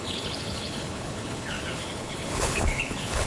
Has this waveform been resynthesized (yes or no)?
yes